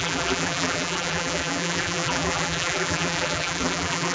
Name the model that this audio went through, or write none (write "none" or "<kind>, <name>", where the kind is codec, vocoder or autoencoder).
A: vocoder, BigVGAN v2